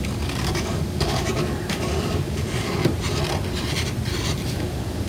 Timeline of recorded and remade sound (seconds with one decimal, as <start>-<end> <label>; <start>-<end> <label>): 0.0-2.8 remade; 2.8-4.5 recorded; 4.5-5.1 remade